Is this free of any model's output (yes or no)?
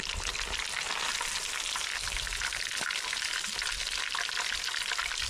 yes